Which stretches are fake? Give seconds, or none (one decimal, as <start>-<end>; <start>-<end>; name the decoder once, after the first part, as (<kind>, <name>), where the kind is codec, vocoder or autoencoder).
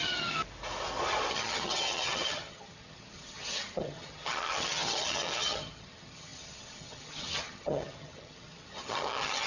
0.0-0.4 (vocoder, HiFi-GAN); 1.3-9.5